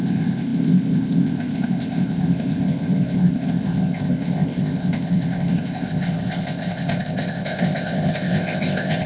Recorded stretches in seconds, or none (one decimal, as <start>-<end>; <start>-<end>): none